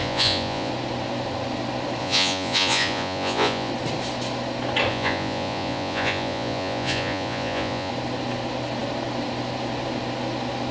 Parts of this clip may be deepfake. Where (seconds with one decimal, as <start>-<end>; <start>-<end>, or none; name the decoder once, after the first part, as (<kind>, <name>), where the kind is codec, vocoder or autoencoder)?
0.0-0.7 (vocoder, Vocos); 2.0-3.7; 4.9-7.9